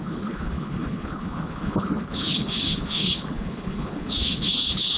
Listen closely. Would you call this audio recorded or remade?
remade